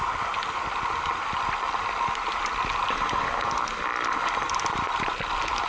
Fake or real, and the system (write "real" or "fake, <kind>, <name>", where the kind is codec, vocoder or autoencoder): real